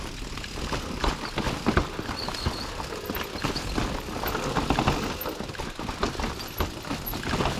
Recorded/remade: recorded